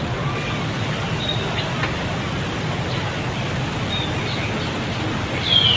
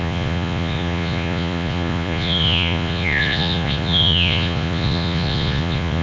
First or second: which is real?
first